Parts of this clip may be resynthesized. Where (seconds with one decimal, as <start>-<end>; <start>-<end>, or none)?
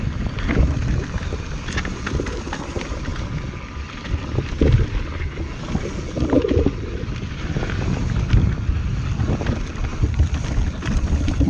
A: none